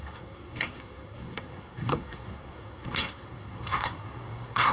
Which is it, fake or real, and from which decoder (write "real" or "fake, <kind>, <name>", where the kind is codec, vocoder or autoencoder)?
fake, codec, SNAC